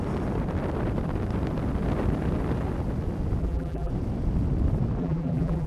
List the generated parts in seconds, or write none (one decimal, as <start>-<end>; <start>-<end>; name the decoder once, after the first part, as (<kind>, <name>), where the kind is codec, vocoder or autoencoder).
3.4-3.9 (vocoder, BigVGAN v2); 5.0-5.7